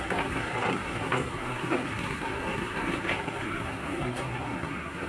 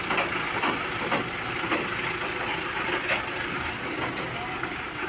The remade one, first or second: first